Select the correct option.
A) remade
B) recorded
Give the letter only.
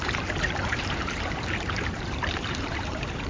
A